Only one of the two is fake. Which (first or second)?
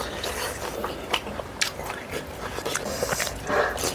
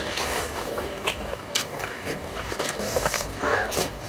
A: second